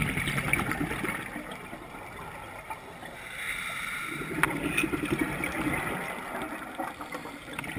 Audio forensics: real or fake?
real